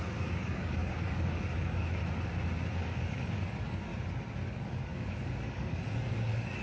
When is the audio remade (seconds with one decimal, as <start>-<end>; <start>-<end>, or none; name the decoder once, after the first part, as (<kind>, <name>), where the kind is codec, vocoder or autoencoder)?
0.0-2.0 (codec, DAC); 2.7-3.9; 4.5-6.6